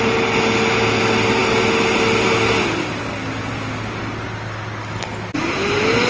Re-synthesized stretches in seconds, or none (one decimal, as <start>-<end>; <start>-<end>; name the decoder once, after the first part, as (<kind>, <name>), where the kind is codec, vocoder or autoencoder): none